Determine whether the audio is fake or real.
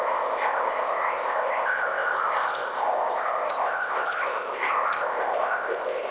fake